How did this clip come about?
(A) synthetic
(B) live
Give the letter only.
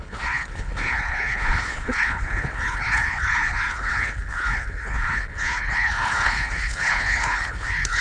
A